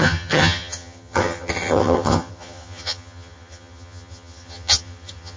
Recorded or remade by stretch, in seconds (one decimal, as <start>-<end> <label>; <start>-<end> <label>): 0.0-5.4 remade